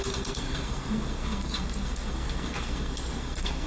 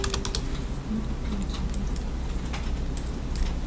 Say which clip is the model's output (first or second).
first